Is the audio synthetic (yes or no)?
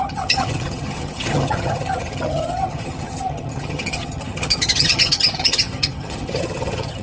yes